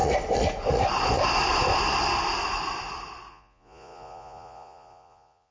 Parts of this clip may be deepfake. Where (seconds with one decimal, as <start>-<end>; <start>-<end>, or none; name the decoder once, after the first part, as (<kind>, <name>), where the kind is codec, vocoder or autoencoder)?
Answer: 3.3-5.5 (vocoder, Vocos)